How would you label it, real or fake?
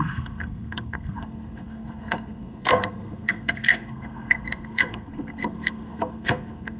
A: fake